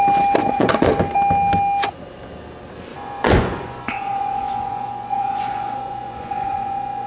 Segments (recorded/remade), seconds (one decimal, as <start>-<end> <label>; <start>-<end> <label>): 0.0-0.4 recorded; 0.4-0.9 remade; 0.9-2.9 recorded; 2.9-7.1 remade

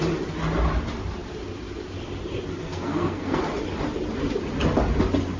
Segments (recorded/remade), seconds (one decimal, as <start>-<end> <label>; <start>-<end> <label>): 0.0-2.6 recorded; 2.6-3.4 remade; 3.4-5.4 recorded

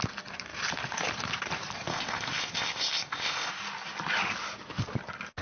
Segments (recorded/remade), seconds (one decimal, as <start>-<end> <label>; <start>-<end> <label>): 0.0-1.9 recorded; 1.9-3.5 remade; 3.5-5.4 recorded

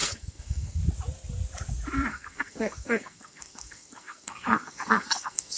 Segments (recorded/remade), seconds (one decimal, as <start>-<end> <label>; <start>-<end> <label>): 0.0-0.8 remade; 0.8-2.1 recorded; 2.1-5.6 remade

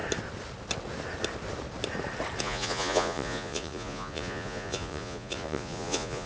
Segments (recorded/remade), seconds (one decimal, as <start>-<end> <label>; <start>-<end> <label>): 0.0-2.4 recorded; 2.4-6.3 remade

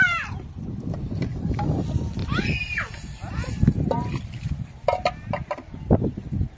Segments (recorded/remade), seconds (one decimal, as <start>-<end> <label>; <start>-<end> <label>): 0.0-6.6 recorded